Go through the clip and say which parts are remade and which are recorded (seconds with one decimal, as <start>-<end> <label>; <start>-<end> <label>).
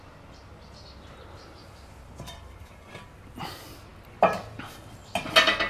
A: 0.0-1.6 recorded; 1.6-2.9 remade; 2.9-5.7 recorded